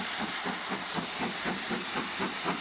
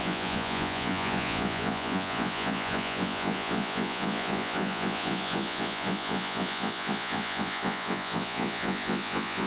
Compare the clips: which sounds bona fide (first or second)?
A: first